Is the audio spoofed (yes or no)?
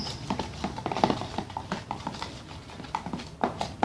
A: no